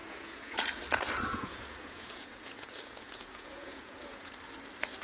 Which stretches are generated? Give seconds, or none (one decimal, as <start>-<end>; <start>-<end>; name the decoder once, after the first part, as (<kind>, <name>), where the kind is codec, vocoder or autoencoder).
0.0-0.7 (vocoder, Vocos); 1.3-4.3